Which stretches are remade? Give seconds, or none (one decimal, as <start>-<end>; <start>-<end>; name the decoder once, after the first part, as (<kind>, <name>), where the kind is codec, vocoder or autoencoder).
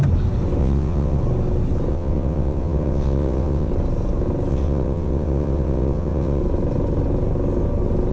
0.6-1.2 (vocoder, WaveNeXt); 1.9-3.7; 4.5-6.4